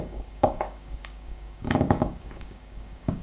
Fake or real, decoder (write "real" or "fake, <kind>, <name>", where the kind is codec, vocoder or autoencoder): fake, codec, DAC